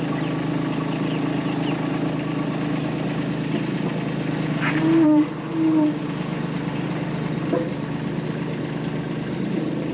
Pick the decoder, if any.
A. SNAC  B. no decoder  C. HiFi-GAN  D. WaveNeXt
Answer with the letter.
B